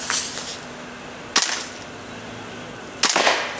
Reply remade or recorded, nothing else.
recorded